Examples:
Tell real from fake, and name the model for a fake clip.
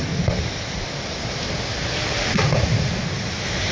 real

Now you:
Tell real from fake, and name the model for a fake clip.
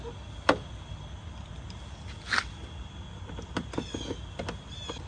real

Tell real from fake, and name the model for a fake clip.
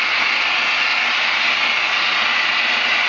real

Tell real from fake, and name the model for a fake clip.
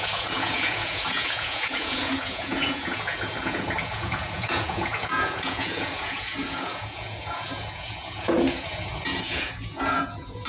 fake, vocoder, Vocos